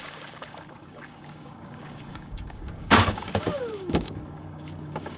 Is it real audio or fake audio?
fake